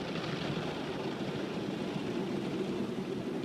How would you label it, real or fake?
real